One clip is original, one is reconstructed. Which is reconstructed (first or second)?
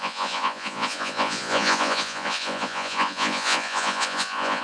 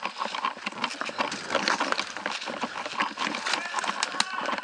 first